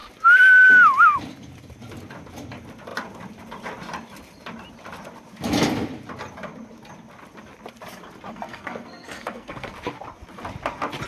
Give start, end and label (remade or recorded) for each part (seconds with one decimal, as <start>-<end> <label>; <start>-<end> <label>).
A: 0.0-8.3 recorded; 8.3-9.7 remade; 9.7-11.1 recorded